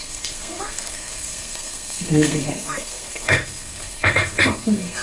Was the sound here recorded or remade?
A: remade